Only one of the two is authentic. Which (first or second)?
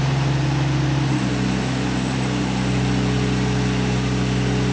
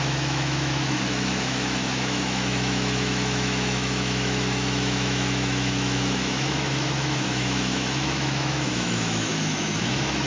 first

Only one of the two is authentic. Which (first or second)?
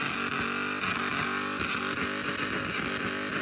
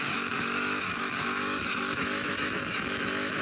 first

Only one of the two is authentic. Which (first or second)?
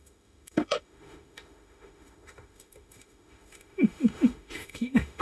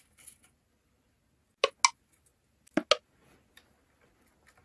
second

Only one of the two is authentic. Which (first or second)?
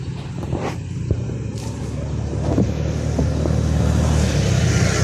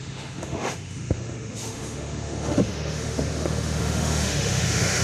first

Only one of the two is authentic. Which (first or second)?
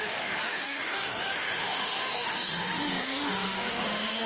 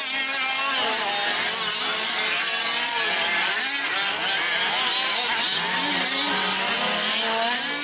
second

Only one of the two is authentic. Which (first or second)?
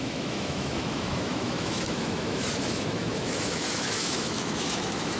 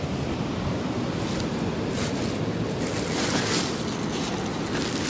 second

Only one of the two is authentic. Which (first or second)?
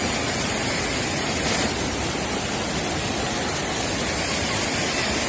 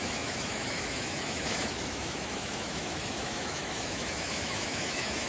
first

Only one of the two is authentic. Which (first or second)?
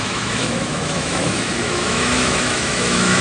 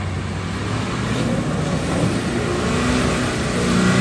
second